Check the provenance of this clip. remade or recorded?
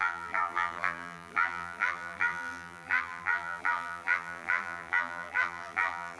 remade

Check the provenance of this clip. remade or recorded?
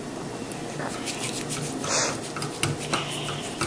recorded